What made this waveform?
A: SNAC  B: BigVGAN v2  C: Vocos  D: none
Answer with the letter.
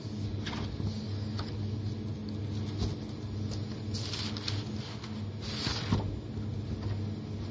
D